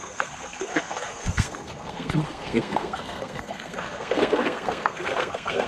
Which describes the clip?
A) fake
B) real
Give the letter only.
A